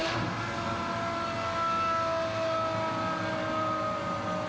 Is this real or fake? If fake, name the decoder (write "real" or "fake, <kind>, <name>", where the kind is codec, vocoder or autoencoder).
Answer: real